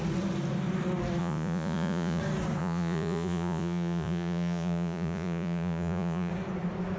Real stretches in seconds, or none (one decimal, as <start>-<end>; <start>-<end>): 0.0-1.2; 2.2-2.6; 6.3-7.0